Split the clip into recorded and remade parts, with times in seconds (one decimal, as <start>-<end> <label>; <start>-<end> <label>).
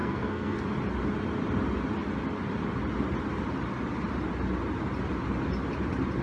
0.0-0.6 remade; 0.6-6.2 recorded